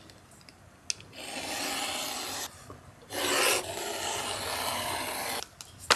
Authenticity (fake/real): real